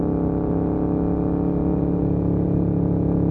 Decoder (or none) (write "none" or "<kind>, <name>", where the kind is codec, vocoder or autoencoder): none